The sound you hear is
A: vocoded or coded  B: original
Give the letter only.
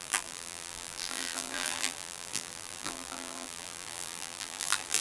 A